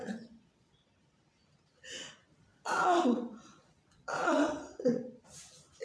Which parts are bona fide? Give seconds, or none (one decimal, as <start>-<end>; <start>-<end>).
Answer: 0.7-2.5; 5.2-5.8